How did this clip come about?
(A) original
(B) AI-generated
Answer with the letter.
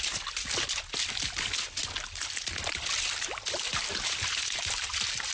A